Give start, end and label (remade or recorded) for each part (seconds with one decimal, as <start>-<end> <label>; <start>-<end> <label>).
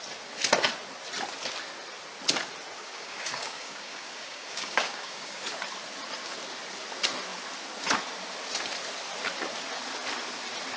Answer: 0.0-2.8 recorded; 2.8-5.4 remade; 5.4-10.8 recorded